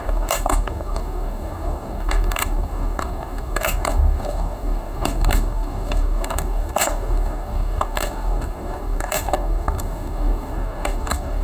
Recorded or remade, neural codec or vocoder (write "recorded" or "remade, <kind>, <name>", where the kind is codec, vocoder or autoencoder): remade, codec, DAC